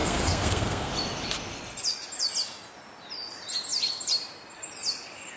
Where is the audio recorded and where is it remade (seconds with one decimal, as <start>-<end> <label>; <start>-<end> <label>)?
0.0-0.9 remade; 0.9-5.4 recorded